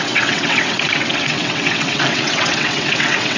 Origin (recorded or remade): remade